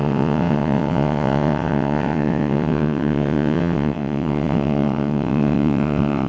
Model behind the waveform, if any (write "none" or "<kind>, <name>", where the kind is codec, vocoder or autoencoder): vocoder, WaveNeXt